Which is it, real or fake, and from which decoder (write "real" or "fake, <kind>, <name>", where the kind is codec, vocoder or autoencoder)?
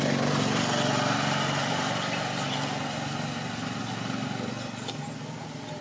real